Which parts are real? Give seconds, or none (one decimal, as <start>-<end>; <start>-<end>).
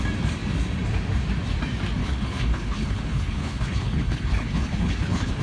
0.0-2.0